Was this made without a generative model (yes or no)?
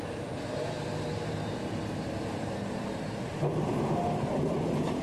yes